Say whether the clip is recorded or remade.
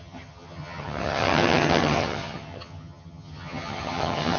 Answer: remade